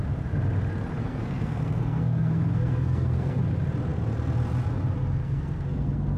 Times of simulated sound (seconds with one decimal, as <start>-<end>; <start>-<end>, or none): 1.0-3.4; 5.2-6.2